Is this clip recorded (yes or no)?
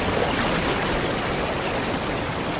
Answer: yes